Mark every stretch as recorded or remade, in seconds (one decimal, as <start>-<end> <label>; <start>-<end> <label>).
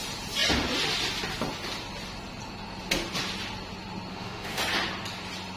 0.0-4.1 recorded; 4.1-4.6 remade; 4.6-5.6 recorded